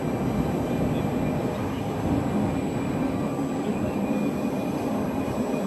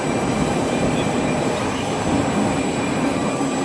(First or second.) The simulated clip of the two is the second